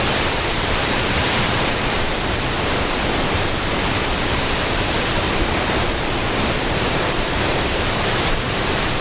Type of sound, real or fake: fake